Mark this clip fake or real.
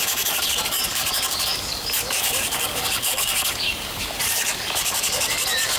fake